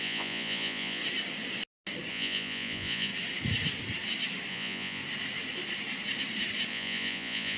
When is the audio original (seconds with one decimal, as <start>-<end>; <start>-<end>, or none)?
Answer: 1.0-2.1; 3.1-4.5; 5.0-6.7